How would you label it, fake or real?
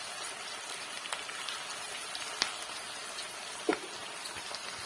real